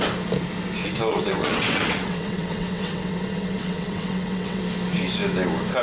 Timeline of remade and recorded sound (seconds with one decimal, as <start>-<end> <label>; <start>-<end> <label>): 0.0-1.1 recorded; 1.1-4.6 remade; 4.6-5.8 recorded